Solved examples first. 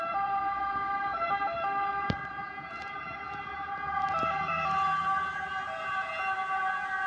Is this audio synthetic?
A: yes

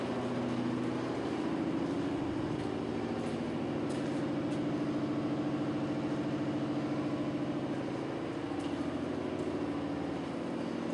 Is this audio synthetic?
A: no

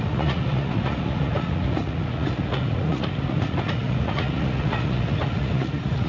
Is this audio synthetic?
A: yes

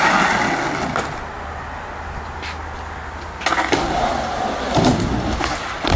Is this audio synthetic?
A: no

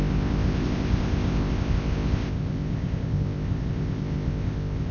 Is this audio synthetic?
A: yes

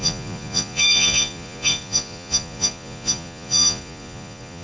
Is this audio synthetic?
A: yes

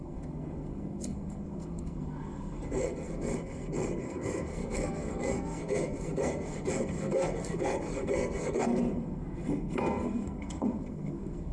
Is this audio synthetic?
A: yes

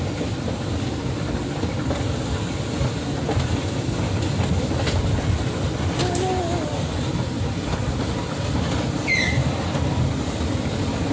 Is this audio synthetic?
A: no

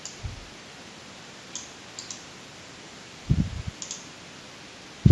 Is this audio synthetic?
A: no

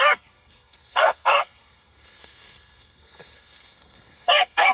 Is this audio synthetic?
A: yes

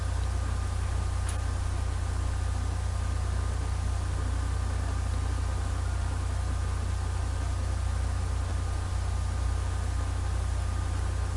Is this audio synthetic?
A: no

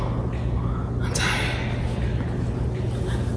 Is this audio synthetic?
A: no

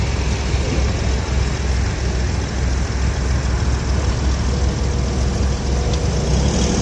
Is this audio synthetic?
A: no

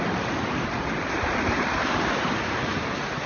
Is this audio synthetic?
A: yes